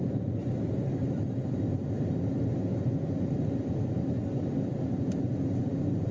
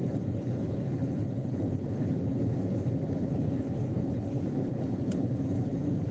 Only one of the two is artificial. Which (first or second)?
second